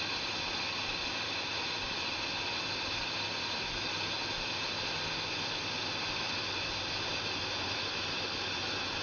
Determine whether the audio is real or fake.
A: real